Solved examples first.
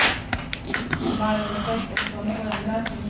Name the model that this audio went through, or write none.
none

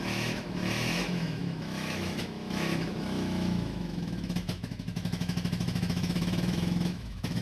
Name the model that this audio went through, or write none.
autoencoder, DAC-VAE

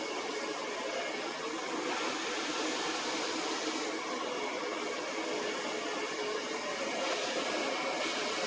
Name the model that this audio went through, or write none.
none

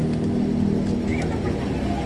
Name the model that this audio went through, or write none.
none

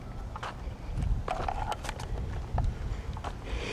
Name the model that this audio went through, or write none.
none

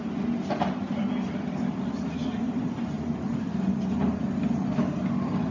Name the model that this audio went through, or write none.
none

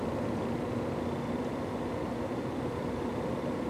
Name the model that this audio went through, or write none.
none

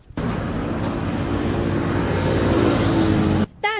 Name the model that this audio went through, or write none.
vocoder, BigVGAN v2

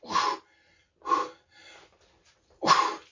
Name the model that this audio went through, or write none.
none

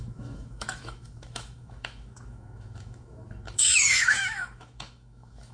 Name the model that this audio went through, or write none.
autoencoder, DAC-VAE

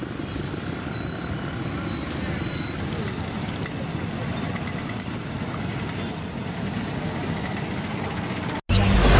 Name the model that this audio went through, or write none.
none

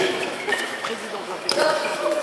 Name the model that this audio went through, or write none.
autoencoder, DAC-VAE